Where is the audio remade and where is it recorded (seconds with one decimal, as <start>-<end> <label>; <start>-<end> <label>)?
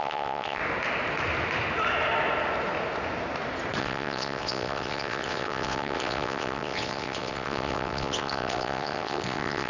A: 0.0-0.6 remade; 0.6-3.8 recorded; 3.8-9.7 remade